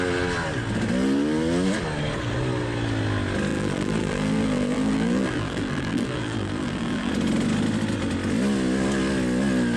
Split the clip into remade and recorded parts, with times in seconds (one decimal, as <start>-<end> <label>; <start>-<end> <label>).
0.0-3.5 recorded; 3.5-7.1 remade; 7.1-9.8 recorded